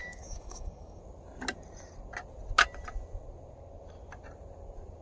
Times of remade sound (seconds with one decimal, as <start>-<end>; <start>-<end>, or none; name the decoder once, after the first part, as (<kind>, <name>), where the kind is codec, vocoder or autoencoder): 0.0-1.0 (codec, DAC)